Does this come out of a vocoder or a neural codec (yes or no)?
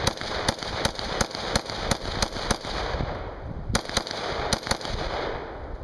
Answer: no